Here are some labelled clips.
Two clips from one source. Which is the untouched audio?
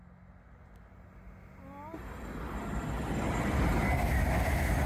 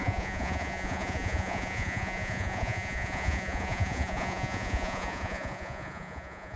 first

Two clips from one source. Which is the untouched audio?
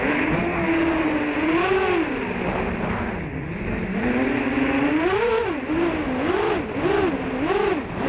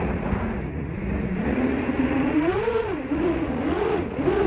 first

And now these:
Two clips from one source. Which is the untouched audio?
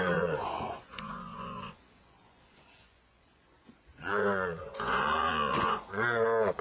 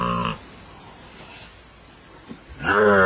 second